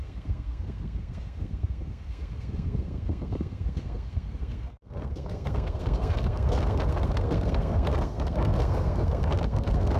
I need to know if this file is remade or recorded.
remade